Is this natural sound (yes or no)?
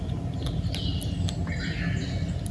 yes